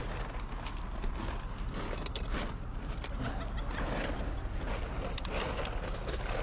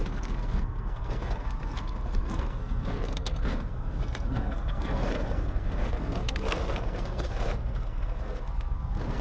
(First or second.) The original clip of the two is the first